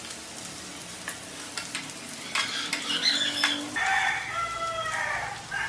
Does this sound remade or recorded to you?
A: recorded